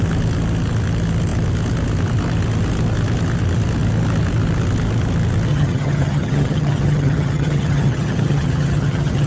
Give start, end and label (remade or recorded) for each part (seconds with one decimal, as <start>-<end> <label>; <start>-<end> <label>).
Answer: 0.0-5.5 recorded; 5.5-9.3 remade